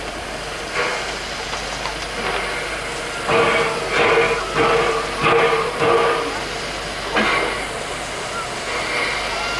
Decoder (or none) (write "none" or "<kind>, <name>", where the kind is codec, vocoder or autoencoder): none